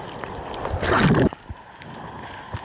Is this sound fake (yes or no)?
no